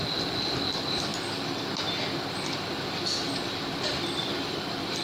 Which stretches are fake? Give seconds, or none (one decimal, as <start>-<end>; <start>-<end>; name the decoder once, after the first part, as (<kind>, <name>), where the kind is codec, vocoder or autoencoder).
0.0-1.1 (vocoder, BigVGAN v2); 4.0-5.0